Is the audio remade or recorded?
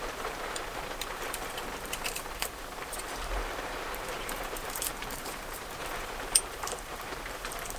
remade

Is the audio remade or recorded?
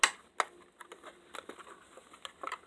recorded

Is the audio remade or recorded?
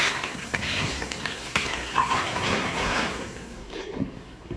remade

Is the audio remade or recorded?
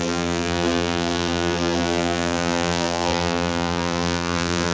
remade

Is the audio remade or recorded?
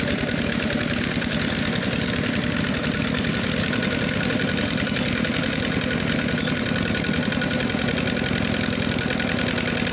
recorded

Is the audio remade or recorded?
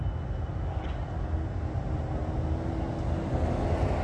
recorded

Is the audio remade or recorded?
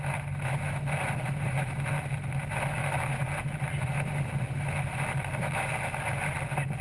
recorded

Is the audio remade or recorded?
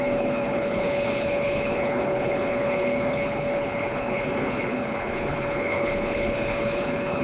remade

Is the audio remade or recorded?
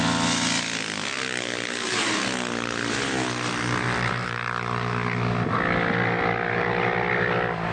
recorded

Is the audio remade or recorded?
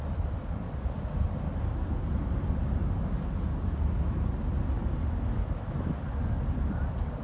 recorded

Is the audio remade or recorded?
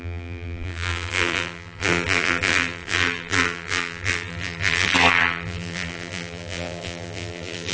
remade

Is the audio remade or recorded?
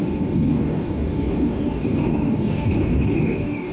remade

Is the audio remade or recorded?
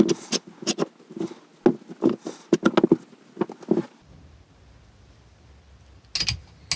recorded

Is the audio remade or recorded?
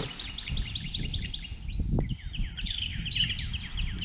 recorded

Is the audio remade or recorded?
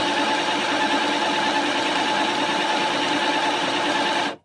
recorded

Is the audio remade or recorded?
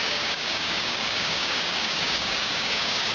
remade